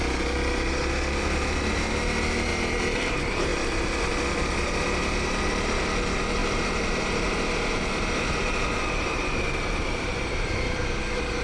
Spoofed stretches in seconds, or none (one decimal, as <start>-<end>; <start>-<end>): 3.5-4.1; 6.4-11.0